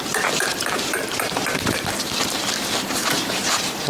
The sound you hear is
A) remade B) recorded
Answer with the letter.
A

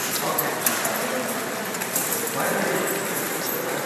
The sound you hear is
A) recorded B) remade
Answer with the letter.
B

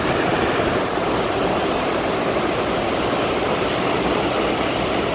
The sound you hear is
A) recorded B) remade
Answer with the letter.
B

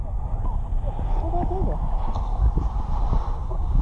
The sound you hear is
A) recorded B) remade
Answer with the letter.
A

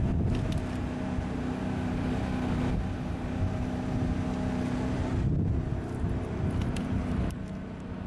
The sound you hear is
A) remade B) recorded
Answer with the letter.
B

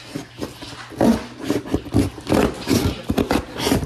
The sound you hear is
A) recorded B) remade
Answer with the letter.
A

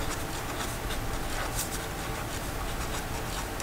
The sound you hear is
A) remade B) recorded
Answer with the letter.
A